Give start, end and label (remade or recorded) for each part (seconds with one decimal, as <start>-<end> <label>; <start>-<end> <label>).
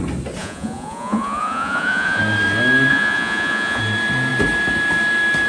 0.0-0.4 recorded; 0.4-2.2 remade; 2.2-2.9 recorded; 2.9-3.8 remade; 3.8-5.5 recorded